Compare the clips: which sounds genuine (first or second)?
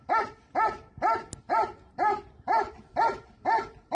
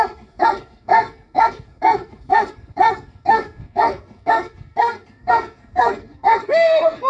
first